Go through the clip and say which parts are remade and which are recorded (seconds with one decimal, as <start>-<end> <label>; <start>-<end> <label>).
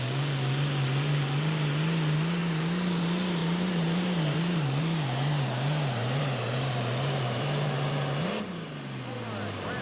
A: 0.0-2.4 recorded; 2.4-3.0 remade; 3.0-3.4 recorded; 3.4-7.9 remade; 7.9-9.8 recorded